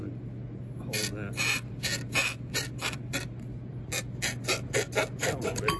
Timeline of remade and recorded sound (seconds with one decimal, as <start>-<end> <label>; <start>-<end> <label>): 0.0-5.8 recorded